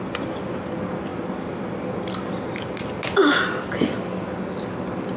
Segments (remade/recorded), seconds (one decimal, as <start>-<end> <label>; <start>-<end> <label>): 0.0-5.2 recorded